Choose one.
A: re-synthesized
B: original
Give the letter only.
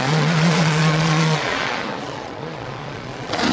A